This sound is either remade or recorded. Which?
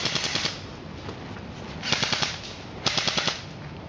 recorded